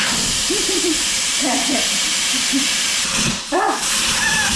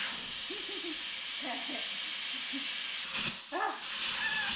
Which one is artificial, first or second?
first